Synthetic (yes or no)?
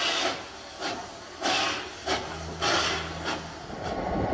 no